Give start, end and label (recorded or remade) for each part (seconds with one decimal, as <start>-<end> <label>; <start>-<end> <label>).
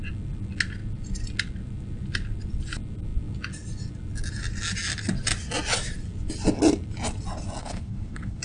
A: 0.0-7.6 recorded; 7.6-8.4 remade